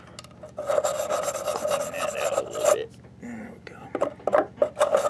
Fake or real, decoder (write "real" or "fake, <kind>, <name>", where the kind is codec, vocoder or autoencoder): real